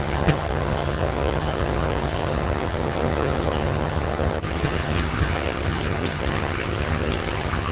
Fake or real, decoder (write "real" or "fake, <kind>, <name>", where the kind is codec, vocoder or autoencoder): fake, vocoder, HiFi-GAN